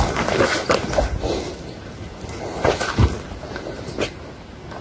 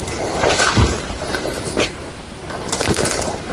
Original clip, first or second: first